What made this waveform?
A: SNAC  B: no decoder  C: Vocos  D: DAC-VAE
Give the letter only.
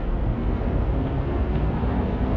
A